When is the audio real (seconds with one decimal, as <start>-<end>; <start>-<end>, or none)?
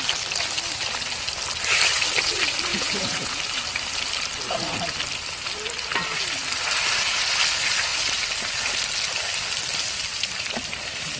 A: 0.0-2.7; 3.4-11.2